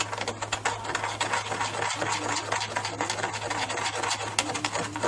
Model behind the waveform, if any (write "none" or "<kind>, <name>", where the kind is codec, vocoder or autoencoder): none